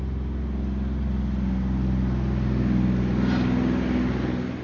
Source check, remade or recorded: recorded